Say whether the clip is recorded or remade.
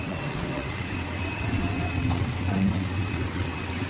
remade